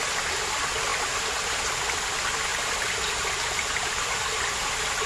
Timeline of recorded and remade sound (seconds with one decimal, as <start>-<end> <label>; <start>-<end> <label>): 0.0-5.1 recorded